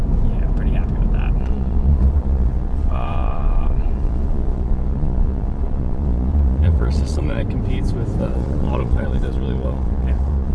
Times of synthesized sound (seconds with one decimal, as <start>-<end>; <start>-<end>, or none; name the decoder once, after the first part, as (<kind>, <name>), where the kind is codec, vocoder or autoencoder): 1.4-7.4 (vocoder, Vocos); 8.2-10.5